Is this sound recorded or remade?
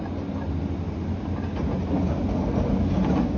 recorded